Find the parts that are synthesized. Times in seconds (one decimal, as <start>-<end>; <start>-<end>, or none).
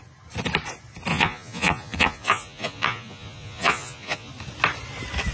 1.1-4.3